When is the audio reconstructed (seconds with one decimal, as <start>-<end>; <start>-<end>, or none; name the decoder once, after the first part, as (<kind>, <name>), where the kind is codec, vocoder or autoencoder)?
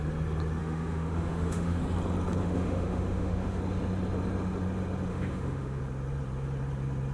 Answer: 0.6-1.8 (autoencoder, DAC-VAE); 2.4-3.6; 5.1-5.8